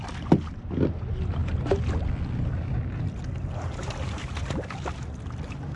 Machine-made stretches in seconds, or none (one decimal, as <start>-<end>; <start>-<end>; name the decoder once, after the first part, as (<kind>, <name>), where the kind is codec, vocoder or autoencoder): none